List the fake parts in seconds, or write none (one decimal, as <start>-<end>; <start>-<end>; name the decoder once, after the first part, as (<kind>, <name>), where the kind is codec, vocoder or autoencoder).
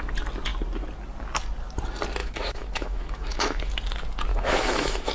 2.2-3.7 (autoencoder, DAC-VAE); 4.3-5.1